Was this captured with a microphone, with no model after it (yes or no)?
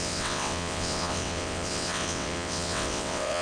no